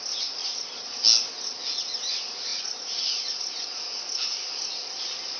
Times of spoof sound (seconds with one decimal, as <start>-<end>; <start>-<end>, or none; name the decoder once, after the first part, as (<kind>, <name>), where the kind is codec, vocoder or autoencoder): 2.5-5.4 (vocoder, BigVGAN v2)